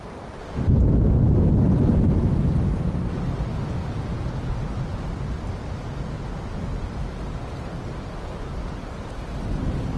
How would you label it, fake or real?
real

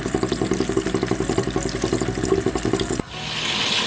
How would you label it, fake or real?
real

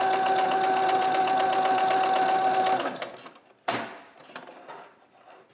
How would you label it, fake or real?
real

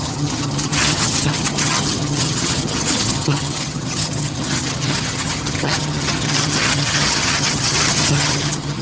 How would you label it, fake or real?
fake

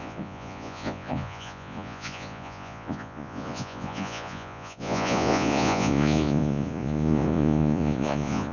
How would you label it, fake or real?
fake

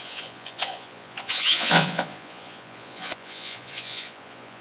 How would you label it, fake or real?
fake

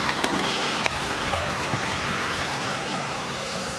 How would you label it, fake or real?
fake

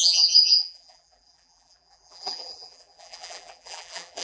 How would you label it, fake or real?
fake